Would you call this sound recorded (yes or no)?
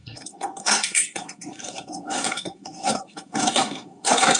no